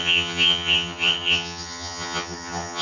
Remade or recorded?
remade